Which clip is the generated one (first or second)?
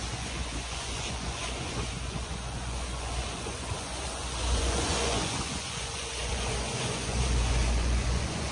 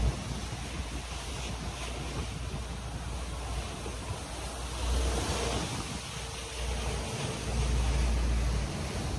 first